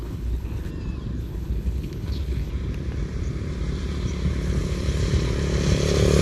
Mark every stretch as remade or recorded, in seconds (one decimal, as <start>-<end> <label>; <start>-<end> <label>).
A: 0.0-0.7 remade; 0.7-1.2 recorded; 1.2-2.5 remade; 2.5-6.2 recorded